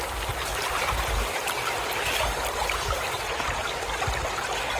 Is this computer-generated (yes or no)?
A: no